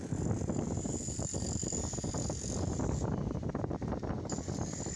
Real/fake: real